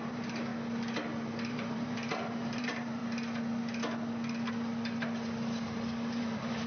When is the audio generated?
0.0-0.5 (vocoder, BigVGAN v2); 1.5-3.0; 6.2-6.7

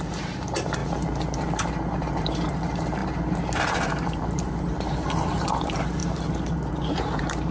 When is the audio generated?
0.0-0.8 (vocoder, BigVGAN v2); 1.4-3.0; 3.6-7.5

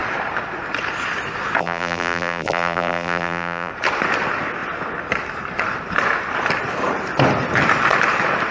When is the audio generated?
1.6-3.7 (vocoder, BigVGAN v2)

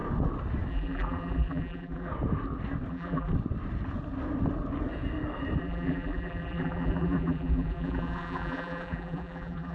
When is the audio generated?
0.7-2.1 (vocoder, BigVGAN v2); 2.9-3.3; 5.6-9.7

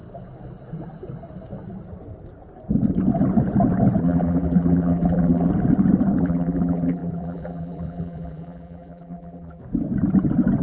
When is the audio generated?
4.0-5.5 (vocoder, BigVGAN v2); 6.2-9.6

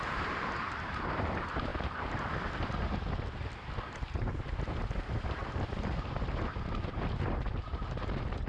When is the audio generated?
0.0-1.7 (vocoder, BigVGAN v2); 4.1-5.4; 6.8-8.5